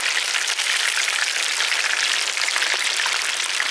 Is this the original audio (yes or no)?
yes